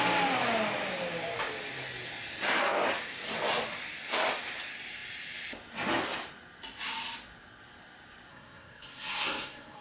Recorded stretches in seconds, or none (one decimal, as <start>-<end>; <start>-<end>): 0.0-8.3